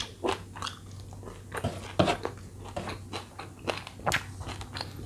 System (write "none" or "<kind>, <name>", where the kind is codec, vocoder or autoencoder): none